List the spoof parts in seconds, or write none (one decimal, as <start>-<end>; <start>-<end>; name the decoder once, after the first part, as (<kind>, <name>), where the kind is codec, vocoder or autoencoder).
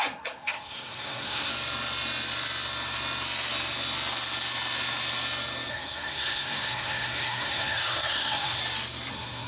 0.0-1.5 (codec, SNAC); 5.7-8.6; 9.1-9.5